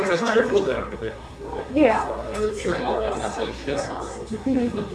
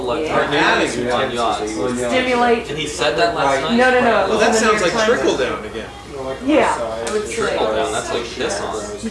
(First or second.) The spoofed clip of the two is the first